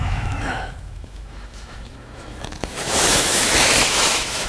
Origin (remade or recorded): remade